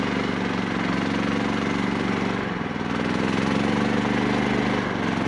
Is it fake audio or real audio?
real